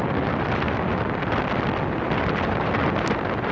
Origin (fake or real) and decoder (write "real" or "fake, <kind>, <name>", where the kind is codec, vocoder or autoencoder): real